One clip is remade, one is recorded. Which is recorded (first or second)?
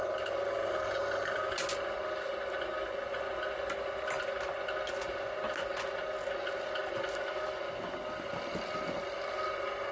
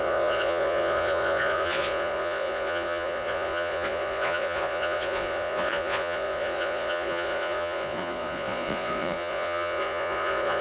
first